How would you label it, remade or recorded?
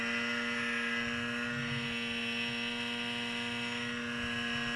recorded